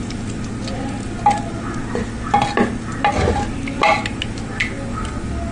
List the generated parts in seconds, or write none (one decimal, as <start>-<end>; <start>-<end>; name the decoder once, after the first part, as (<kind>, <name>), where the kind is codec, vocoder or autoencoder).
none